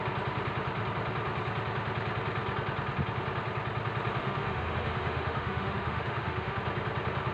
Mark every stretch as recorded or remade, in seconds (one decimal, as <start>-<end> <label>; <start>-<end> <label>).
0.0-4.2 recorded; 4.2-6.6 remade; 6.6-7.3 recorded